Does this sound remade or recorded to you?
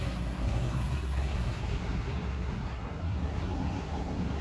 remade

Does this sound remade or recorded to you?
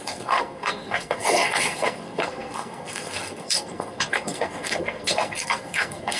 remade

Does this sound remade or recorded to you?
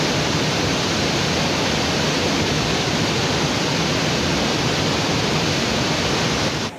recorded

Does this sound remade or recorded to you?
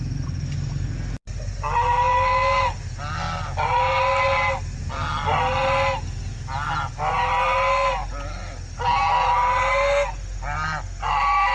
recorded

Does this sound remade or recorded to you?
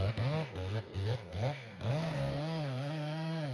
remade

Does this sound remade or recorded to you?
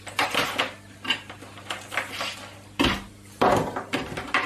recorded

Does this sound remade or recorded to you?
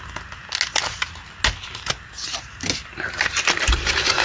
recorded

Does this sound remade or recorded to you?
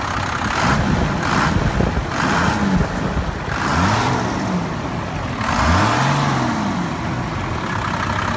recorded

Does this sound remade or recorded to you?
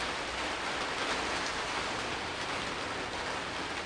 recorded